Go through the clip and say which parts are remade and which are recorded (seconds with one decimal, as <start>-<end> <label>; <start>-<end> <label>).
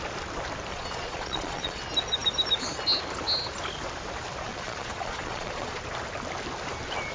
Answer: 0.0-0.7 recorded; 0.7-1.8 remade; 1.8-4.5 recorded; 4.5-5.8 remade; 5.8-7.1 recorded